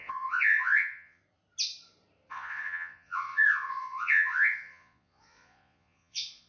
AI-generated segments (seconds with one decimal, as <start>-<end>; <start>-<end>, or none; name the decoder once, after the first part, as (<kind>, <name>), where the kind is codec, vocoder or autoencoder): 0.0-1.2 (vocoder, Vocos); 2.3-6.5